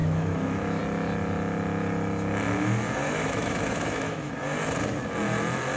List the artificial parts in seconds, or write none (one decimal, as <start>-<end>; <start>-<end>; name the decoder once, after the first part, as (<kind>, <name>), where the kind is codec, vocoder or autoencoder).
0.0-0.8 (autoencoder, DAC-VAE); 3.0-4.3